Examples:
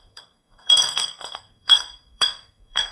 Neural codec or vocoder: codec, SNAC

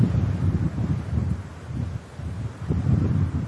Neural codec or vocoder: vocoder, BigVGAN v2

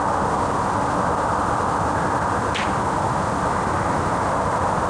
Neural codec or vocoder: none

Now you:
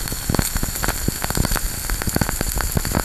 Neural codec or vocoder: none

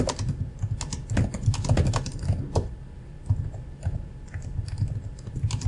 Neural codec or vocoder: none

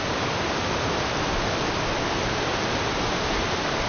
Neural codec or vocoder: none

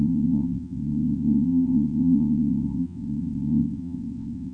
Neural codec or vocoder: vocoder, WaveNeXt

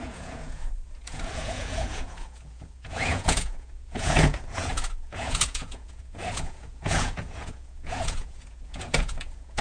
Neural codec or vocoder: vocoder, Vocos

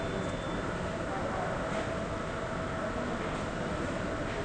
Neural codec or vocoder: none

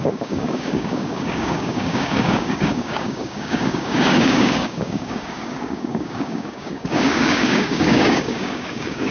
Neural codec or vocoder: codec, DAC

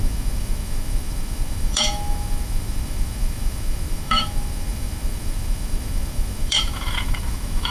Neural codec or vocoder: autoencoder, DAC-VAE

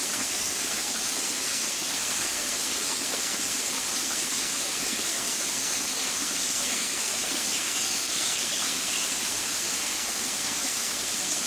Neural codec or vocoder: codec, SNAC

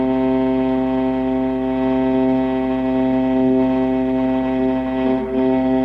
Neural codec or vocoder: none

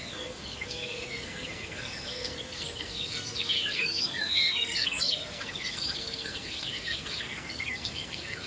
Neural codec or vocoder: codec, SNAC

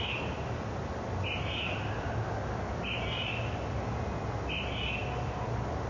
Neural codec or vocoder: none